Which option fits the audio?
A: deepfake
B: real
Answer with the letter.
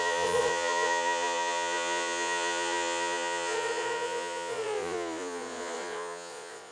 A